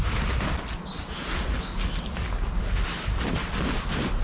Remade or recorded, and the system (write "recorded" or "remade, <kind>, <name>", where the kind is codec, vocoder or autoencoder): recorded